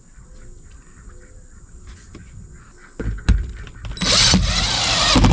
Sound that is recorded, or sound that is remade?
recorded